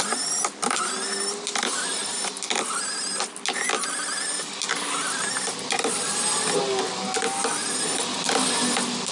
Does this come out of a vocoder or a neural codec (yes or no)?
no